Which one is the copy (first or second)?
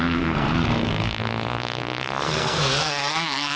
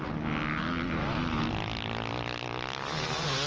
first